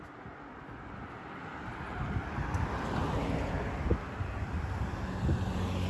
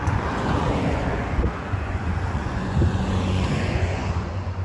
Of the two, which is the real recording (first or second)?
first